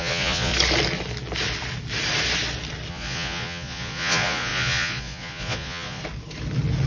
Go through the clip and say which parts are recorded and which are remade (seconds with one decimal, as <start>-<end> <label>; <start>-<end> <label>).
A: 0.0-0.5 remade; 0.5-2.9 recorded; 2.9-6.0 remade; 6.0-6.9 recorded

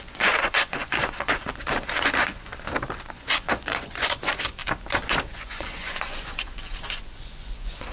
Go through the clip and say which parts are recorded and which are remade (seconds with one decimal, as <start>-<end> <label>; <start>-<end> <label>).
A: 0.0-2.5 remade; 2.5-3.1 recorded; 3.1-4.6 remade; 4.6-5.3 recorded; 5.3-7.9 remade

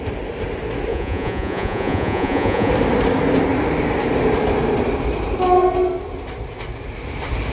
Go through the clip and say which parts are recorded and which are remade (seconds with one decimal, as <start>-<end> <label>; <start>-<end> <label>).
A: 0.0-0.9 recorded; 0.9-2.7 remade; 2.7-7.5 recorded

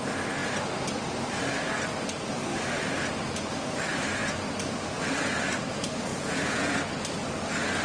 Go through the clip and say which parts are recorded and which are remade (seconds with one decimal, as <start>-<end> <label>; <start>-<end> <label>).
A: 0.0-6.1 recorded; 6.1-6.7 remade; 6.7-7.8 recorded

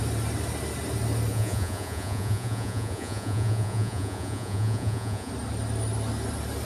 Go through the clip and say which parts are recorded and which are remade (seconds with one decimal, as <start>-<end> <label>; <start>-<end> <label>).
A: 0.0-1.3 recorded; 1.3-5.3 remade; 5.3-6.6 recorded

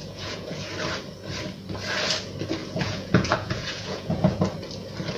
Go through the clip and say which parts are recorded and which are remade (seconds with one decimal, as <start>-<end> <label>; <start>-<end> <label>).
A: 0.0-0.7 remade; 0.7-2.6 recorded; 2.6-4.4 remade; 4.4-5.2 recorded

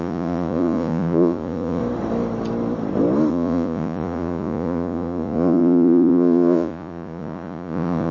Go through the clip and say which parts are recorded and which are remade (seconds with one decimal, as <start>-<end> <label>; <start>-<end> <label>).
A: 0.0-1.8 remade; 1.8-3.3 recorded; 3.3-8.1 remade